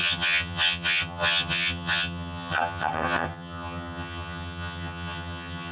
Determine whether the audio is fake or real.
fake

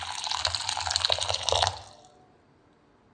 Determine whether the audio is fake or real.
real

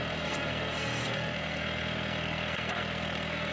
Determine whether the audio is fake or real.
fake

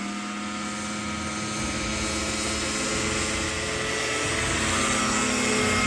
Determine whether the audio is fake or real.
real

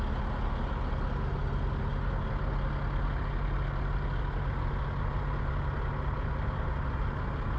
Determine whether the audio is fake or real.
real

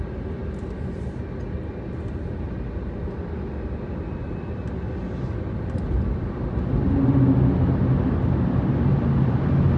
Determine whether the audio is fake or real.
real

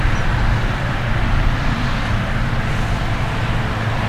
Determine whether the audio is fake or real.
real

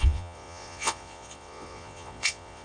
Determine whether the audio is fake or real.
fake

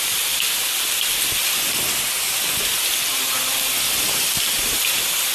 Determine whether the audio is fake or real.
real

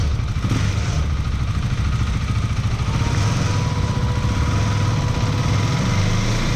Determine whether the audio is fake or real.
real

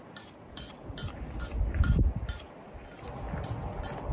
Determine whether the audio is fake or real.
real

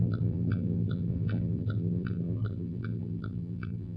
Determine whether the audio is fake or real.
fake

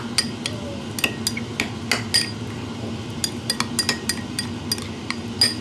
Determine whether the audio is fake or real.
real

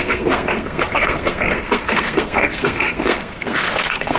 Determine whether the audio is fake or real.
fake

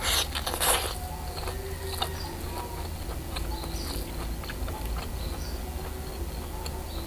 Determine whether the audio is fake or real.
real